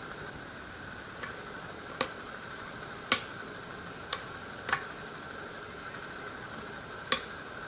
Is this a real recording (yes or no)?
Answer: yes